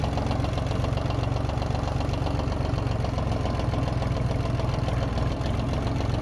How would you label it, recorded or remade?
recorded